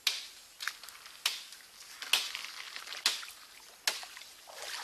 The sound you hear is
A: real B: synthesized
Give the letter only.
A